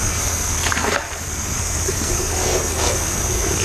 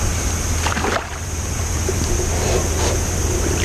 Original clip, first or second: second